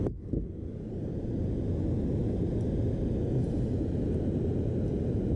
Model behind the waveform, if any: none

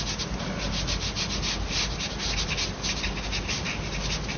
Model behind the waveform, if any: none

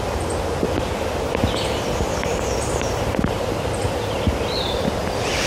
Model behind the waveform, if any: vocoder, BigVGAN v2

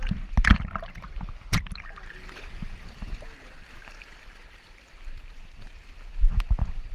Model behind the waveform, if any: none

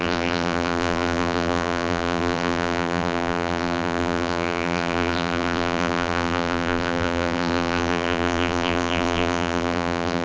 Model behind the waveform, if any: vocoder, BigVGAN v2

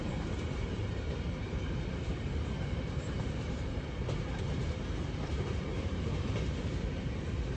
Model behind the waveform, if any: vocoder, BigVGAN v2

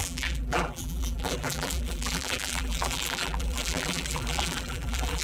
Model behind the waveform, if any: vocoder, BigVGAN v2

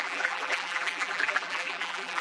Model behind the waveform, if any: vocoder, BigVGAN v2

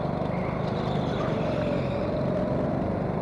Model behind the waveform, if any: none